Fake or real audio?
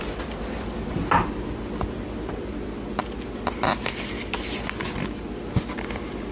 real